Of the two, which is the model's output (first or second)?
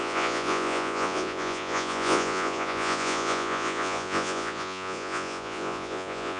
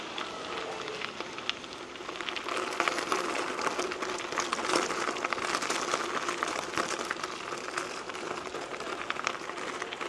first